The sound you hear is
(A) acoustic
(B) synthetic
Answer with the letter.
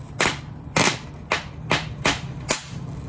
A